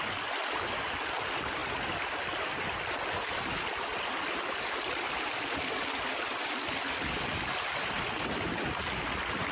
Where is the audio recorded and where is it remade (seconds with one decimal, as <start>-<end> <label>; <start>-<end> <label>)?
0.0-9.5 recorded